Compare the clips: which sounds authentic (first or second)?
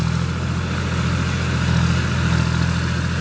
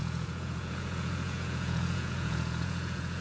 first